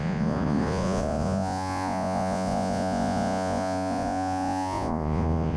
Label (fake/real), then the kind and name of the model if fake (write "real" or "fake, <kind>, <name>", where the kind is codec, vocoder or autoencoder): fake, vocoder, Vocos